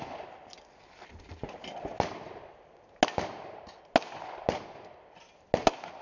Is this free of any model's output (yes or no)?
yes